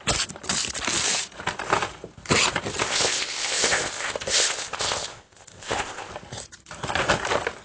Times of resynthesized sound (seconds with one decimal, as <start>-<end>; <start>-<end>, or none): 2.8-6.1